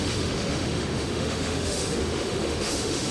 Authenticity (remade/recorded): remade